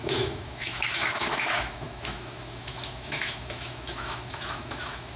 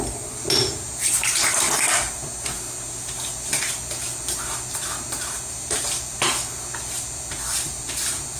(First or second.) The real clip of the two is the second